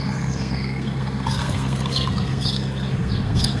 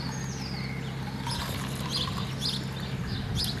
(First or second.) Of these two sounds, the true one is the second